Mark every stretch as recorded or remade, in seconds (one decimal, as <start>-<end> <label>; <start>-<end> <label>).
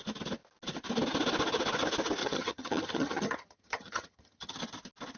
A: 0.0-2.2 recorded; 2.2-4.6 remade; 4.6-5.2 recorded